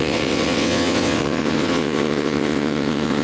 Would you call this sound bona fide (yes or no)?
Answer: no